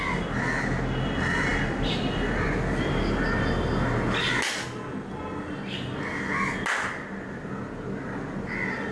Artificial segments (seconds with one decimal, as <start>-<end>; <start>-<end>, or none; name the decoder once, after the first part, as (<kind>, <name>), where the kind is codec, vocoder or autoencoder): none